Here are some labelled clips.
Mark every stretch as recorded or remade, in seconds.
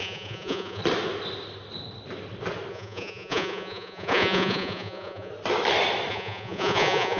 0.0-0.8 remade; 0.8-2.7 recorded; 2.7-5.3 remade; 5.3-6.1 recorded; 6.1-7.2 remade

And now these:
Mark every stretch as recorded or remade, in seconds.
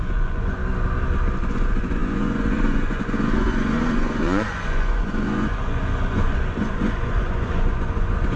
0.0-0.6 remade; 0.6-1.5 recorded; 1.5-8.4 remade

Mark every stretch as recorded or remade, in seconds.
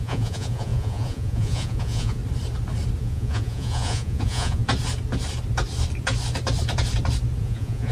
0.0-2.2 remade; 2.2-3.0 recorded; 3.0-4.6 remade; 4.6-7.4 recorded; 7.4-7.9 remade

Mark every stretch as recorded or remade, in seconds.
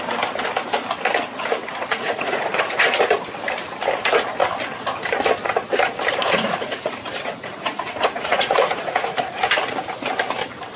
0.0-1.9 recorded; 1.9-3.0 remade; 3.0-6.2 recorded; 6.2-9.4 remade; 9.4-10.8 recorded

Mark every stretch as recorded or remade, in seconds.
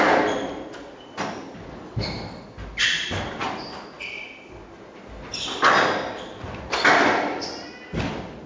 0.0-8.5 recorded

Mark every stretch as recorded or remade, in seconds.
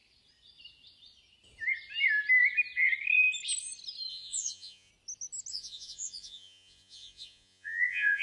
0.0-4.1 recorded; 4.1-4.9 remade; 4.9-5.5 recorded; 5.5-8.2 remade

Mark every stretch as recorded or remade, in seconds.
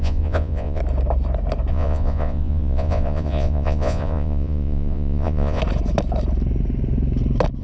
0.0-0.8 remade; 0.8-1.7 recorded; 1.7-5.6 remade; 5.6-7.6 recorded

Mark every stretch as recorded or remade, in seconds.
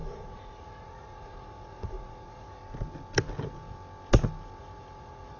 0.0-2.6 remade; 2.6-4.6 recorded; 4.6-5.4 remade